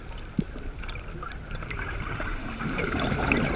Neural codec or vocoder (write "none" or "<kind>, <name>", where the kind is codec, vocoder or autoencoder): none